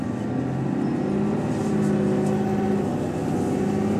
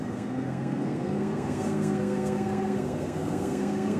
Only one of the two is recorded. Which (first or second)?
first